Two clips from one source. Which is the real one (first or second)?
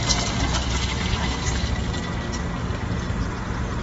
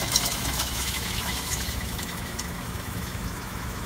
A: first